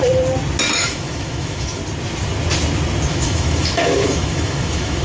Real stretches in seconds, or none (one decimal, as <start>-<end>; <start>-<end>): 0.0-0.8; 1.8-3.1